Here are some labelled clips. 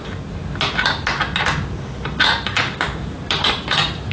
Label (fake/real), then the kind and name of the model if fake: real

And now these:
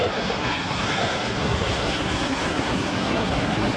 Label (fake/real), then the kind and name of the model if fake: fake, codec, SNAC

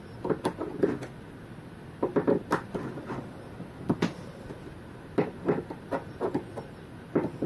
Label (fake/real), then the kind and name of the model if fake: real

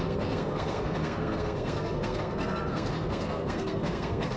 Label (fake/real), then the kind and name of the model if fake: fake, codec, SNAC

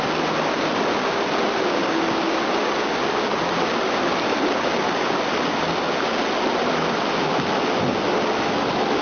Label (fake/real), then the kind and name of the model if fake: real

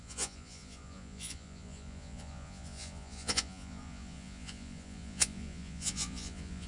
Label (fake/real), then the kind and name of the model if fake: fake, vocoder, Vocos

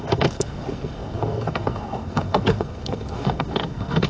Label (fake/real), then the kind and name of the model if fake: fake, codec, SNAC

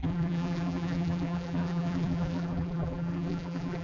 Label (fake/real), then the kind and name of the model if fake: fake, vocoder, BigVGAN v2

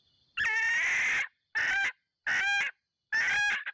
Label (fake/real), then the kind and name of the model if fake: real